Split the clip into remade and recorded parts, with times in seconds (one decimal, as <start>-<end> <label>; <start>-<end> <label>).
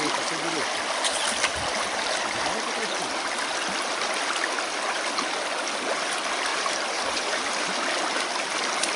0.0-6.5 recorded; 6.5-7.5 remade; 7.5-9.0 recorded